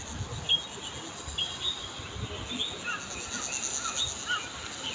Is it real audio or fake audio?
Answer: real